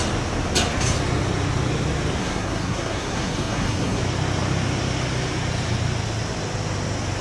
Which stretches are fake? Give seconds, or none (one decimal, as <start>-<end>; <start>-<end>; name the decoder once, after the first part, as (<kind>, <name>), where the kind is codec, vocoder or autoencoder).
2.2-4.0 (codec, SNAC)